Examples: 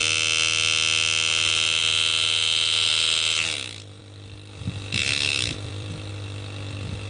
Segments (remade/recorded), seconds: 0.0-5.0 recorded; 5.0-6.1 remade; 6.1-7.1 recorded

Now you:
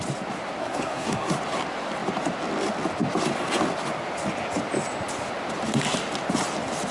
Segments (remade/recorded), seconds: 0.0-0.6 recorded; 0.6-1.3 remade; 1.3-6.9 recorded

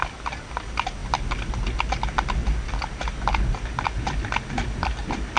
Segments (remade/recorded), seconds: 0.0-5.4 recorded

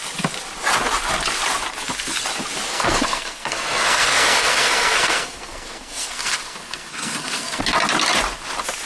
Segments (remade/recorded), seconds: 0.0-2.7 recorded; 2.7-7.6 remade; 7.6-8.9 recorded

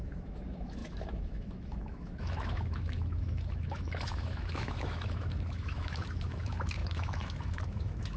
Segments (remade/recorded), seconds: 0.0-8.2 remade

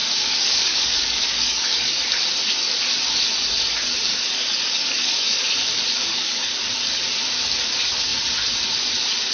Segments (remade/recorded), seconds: 0.0-2.0 remade; 2.0-4.1 recorded; 4.1-5.5 remade; 5.5-5.9 recorded; 5.9-6.6 remade; 6.6-9.3 recorded

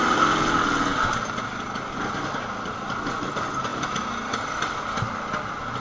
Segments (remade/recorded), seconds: 0.0-5.8 recorded